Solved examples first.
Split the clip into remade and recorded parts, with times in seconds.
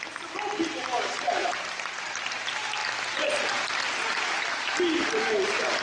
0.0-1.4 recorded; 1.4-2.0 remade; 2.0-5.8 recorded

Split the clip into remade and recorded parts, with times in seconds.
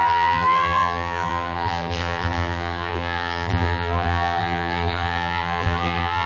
0.0-6.3 remade